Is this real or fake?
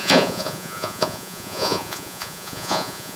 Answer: fake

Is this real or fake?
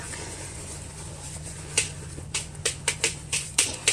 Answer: fake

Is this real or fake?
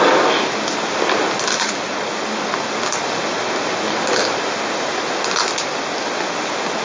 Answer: real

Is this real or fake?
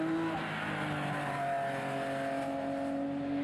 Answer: real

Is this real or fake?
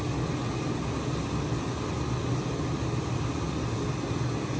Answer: real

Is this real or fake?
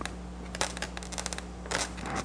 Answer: real